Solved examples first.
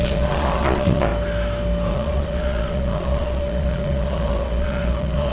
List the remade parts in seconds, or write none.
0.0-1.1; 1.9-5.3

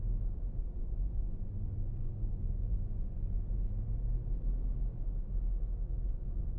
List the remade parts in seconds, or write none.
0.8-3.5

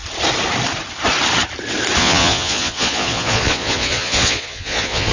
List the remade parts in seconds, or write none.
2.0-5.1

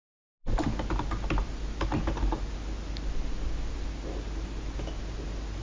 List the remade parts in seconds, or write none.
none

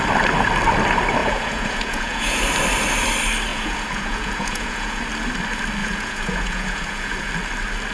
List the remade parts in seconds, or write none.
1.2-2.4; 3.5-5.0; 5.8-7.3